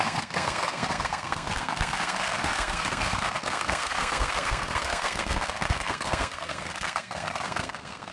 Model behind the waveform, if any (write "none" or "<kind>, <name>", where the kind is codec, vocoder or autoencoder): codec, SNAC